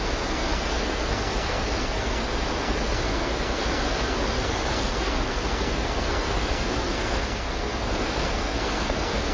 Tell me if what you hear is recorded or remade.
remade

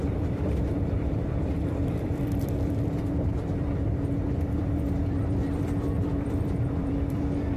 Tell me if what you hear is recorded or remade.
remade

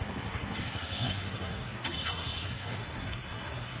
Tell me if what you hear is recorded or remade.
remade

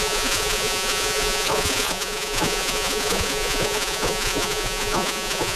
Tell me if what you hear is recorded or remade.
remade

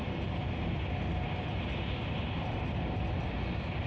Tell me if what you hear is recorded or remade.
recorded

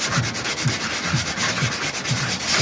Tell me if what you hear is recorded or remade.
recorded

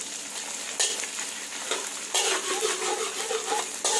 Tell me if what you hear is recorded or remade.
recorded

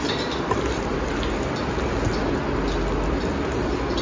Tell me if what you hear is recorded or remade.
recorded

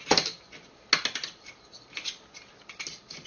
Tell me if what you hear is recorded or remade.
recorded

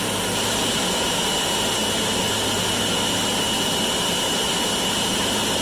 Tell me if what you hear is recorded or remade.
recorded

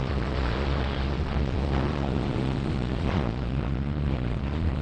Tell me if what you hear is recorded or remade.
remade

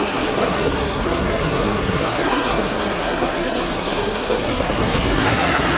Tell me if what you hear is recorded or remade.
remade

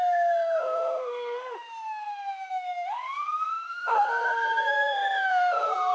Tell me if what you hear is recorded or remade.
remade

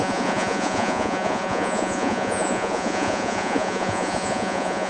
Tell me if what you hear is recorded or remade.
remade